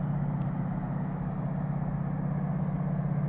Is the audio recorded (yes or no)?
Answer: yes